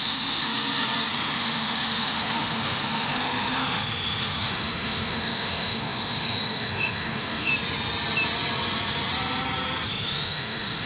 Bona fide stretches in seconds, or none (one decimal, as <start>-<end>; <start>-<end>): 0.5-1.1; 7.5-9.9